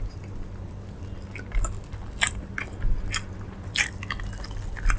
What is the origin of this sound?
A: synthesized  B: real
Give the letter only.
B